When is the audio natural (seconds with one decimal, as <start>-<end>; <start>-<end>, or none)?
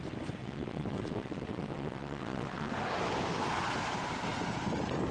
0.0-0.4; 2.7-5.1